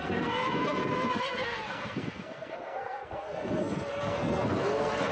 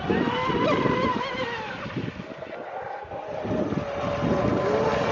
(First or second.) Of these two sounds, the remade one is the first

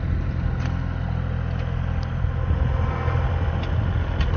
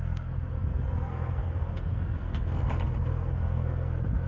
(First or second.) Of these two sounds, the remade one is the second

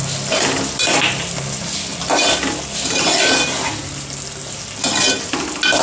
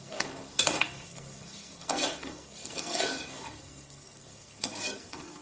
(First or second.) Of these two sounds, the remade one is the second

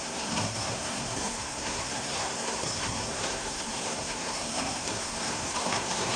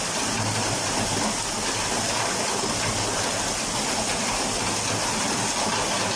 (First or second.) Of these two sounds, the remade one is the first